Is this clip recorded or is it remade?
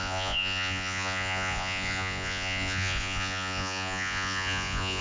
remade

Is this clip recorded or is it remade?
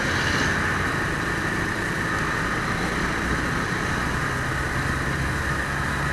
recorded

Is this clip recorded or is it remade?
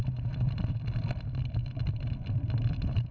remade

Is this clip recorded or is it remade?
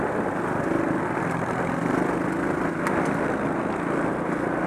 recorded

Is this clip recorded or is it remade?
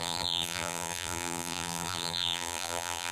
remade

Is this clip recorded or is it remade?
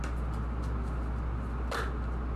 recorded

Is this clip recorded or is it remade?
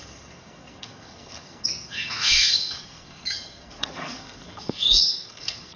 remade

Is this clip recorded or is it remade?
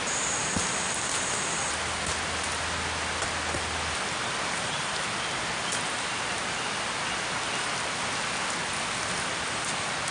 recorded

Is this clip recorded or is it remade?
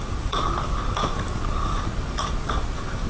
recorded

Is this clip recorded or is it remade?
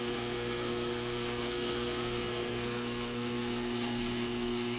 remade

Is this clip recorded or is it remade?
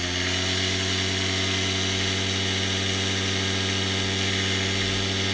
recorded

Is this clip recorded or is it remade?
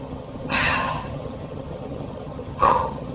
remade